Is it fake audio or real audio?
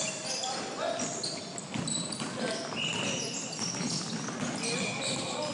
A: real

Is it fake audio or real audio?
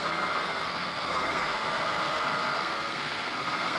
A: fake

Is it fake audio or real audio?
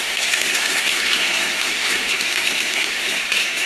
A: fake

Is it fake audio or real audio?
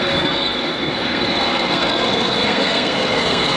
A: fake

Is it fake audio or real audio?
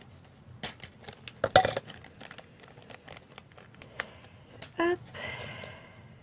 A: real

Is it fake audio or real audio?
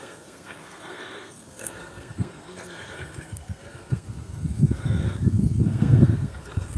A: fake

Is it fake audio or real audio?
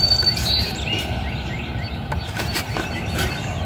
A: real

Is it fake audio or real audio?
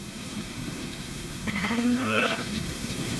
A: fake